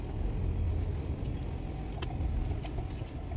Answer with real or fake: real